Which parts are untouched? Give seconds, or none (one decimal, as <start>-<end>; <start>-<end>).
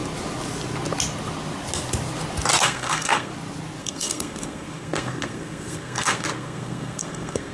0.0-2.6; 3.3-3.8